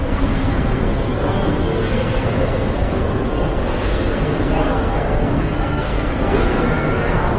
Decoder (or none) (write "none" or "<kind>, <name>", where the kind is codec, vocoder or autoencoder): codec, SNAC